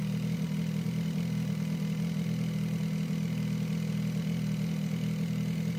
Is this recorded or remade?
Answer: recorded